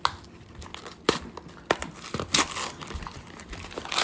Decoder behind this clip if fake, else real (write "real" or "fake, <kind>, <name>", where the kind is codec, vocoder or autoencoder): real